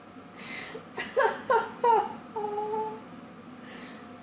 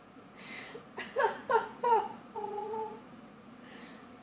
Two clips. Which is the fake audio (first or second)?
second